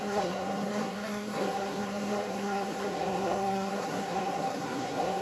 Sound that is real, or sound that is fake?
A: fake